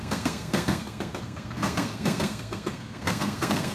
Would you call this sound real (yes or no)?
no